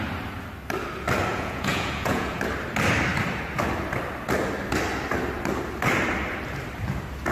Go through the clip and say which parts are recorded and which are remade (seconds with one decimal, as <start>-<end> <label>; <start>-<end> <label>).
0.0-1.3 recorded; 1.3-2.4 remade; 2.4-7.3 recorded